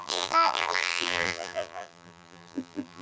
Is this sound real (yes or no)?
no